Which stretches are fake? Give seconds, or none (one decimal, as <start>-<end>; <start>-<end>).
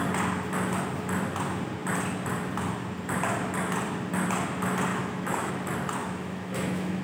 4.9-5.5; 6.0-7.0